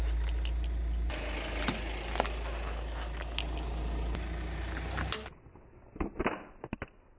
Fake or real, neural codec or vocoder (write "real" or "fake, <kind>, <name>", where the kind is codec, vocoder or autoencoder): real